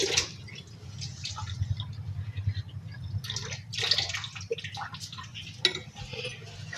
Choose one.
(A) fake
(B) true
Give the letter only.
B